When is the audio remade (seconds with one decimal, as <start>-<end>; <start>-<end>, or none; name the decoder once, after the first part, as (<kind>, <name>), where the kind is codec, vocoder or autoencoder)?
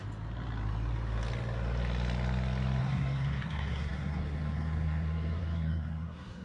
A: 2.8-6.4 (codec, SNAC)